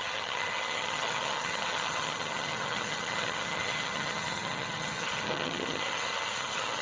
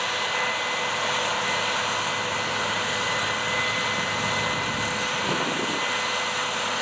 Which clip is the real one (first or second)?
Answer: second